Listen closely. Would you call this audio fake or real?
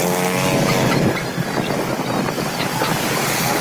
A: real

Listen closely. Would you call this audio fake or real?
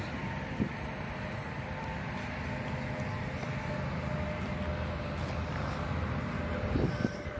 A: real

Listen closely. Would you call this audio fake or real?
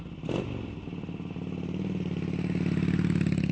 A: real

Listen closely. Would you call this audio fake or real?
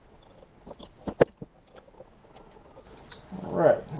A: real